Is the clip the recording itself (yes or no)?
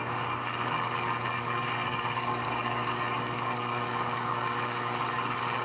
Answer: no